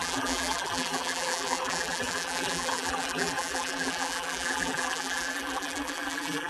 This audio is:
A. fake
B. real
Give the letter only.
A